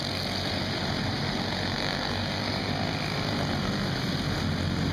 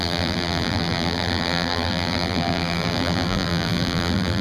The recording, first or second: first